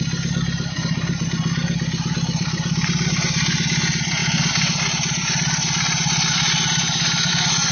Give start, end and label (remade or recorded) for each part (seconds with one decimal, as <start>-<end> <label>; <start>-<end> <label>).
0.0-7.7 recorded